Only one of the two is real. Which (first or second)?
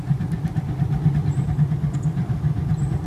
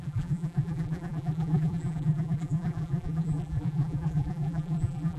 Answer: first